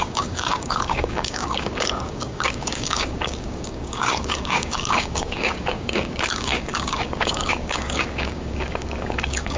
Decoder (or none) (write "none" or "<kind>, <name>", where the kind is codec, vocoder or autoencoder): codec, DAC